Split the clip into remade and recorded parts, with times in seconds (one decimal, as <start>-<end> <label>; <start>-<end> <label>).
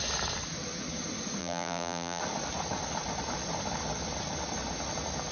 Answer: 0.0-1.4 recorded; 1.4-2.2 remade; 2.2-5.3 recorded